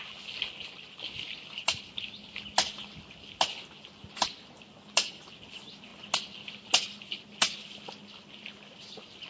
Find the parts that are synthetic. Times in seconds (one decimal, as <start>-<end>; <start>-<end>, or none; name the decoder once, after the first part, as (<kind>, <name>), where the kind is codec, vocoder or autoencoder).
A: none